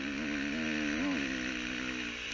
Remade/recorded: recorded